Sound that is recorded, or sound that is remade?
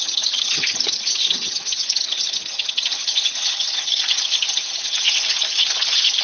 remade